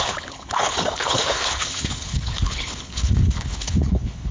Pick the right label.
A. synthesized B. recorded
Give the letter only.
A